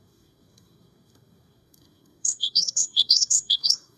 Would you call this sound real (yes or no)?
no